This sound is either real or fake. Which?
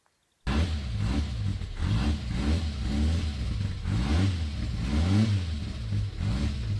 real